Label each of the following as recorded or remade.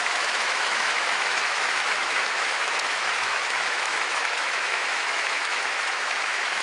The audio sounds remade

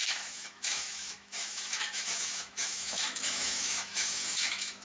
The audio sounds remade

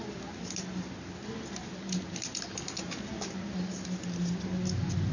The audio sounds recorded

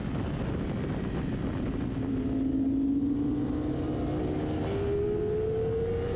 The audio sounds recorded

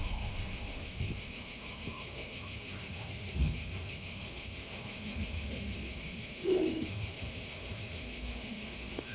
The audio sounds remade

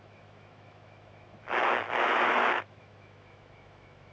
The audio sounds remade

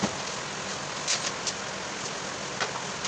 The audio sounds recorded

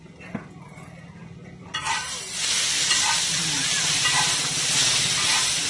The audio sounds recorded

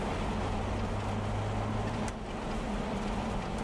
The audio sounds recorded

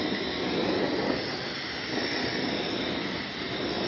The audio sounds recorded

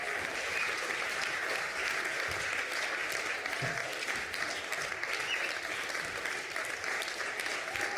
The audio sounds recorded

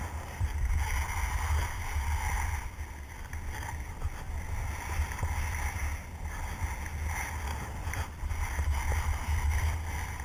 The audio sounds recorded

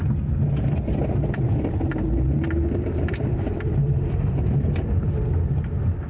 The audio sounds recorded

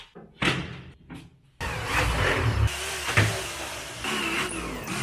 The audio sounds recorded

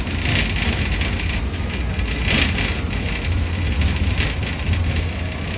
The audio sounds recorded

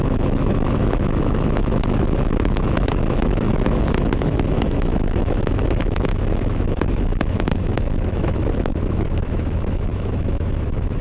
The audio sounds remade